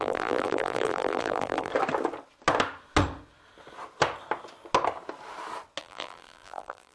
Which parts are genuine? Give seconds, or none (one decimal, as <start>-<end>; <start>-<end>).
1.7-5.8